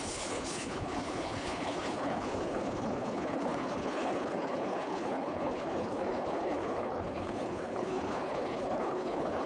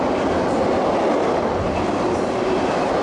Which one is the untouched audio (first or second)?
second